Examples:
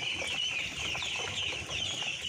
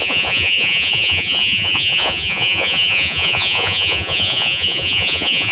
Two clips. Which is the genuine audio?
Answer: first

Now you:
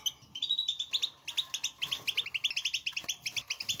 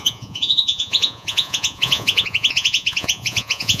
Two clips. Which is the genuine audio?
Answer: first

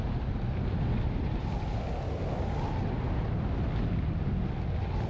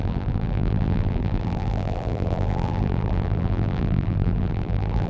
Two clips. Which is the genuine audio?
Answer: first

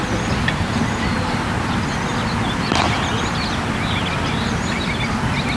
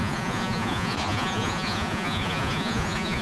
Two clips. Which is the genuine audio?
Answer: first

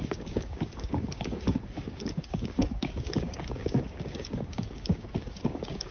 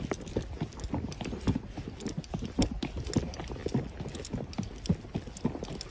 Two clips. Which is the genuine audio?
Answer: second